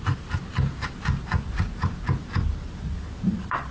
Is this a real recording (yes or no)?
yes